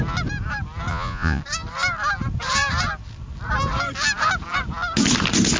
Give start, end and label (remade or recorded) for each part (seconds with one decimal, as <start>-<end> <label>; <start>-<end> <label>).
0.0-0.9 recorded; 0.9-1.4 remade; 1.4-5.6 recorded